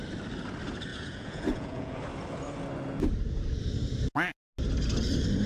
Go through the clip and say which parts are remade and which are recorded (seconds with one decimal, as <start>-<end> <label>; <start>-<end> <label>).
0.0-0.9 recorded; 0.9-2.0 remade; 2.0-5.5 recorded